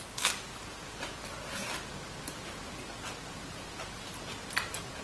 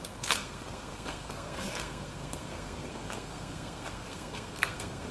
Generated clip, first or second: second